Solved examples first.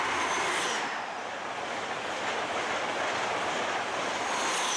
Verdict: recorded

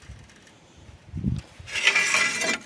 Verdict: recorded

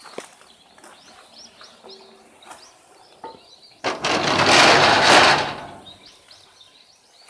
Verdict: recorded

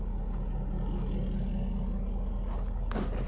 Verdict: recorded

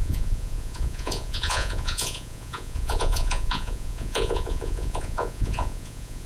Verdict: remade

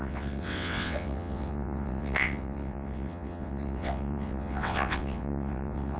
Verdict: remade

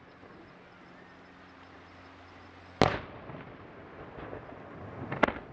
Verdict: recorded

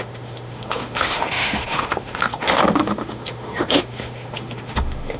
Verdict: remade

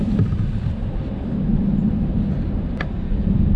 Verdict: recorded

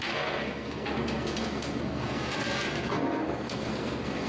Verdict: remade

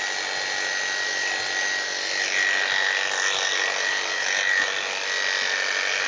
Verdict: recorded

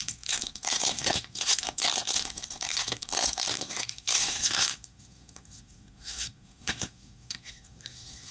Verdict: remade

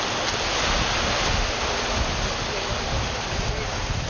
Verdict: recorded